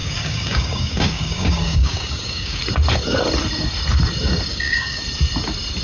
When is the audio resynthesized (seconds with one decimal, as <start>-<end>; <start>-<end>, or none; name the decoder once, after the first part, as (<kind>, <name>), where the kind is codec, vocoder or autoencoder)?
0.0-2.6 (codec, DAC); 4.5-5.0